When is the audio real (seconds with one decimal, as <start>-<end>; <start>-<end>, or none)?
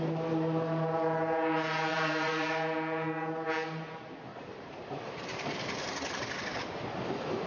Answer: 0.0-1.9; 2.5-4.3; 6.6-7.5